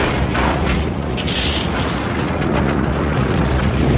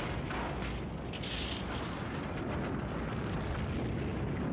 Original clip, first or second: second